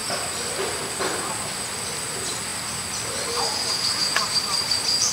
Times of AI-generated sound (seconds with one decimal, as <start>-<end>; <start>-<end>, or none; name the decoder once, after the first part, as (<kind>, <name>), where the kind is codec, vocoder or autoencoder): 3.5-4.2 (vocoder, Vocos)